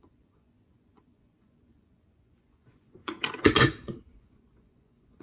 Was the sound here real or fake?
fake